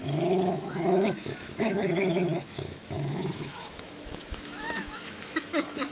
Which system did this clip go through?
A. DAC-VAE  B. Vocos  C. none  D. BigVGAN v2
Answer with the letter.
A